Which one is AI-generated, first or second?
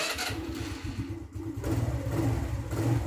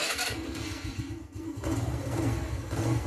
second